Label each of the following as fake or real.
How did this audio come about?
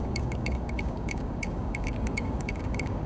fake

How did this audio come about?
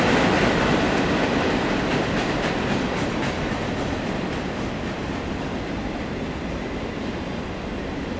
real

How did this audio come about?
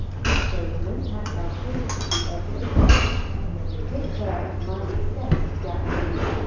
real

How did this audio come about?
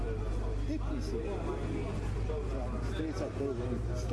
real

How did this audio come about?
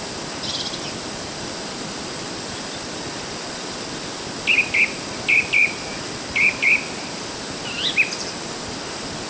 real